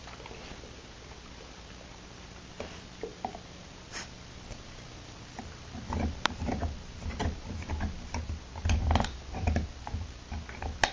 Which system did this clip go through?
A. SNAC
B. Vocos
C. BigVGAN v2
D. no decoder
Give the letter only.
D